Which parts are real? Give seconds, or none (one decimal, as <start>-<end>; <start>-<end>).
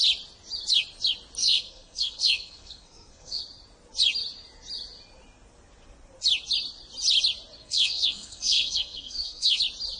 0.0-1.4; 3.4-7.6; 9.6-10.0